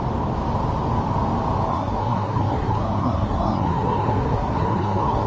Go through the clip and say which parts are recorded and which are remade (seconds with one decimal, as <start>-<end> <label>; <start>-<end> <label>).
0.0-1.7 recorded; 1.7-5.3 remade